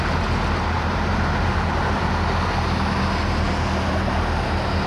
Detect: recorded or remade recorded